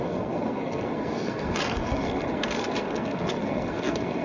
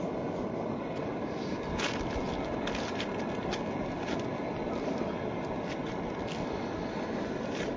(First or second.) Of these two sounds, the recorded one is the second